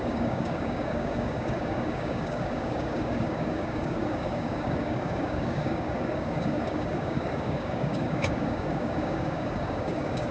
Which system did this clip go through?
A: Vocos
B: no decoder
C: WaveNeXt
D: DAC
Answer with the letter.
D